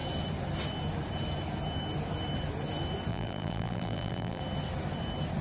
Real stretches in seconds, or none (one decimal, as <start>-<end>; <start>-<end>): 0.0-3.1; 4.4-5.4